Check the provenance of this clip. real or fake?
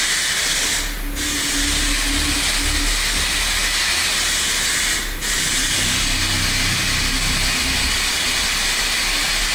real